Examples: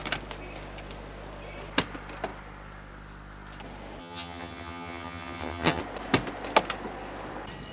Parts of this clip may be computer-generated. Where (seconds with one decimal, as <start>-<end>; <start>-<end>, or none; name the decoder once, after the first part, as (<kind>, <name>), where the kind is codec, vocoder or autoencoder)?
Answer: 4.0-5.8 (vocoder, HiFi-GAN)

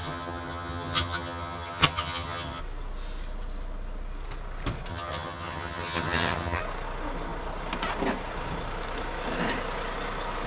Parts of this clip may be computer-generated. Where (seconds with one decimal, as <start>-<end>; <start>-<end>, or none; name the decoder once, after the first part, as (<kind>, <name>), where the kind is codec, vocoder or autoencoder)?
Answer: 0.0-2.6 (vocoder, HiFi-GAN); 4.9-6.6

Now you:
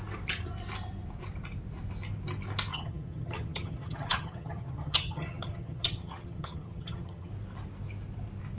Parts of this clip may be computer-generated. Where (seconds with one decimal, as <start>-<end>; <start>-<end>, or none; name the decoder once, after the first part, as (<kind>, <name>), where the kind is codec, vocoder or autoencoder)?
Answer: 2.7-7.3 (vocoder, HiFi-GAN)

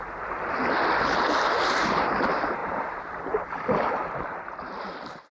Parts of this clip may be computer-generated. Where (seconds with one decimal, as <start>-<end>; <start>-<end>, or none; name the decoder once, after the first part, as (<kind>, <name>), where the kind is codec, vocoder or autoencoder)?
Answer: none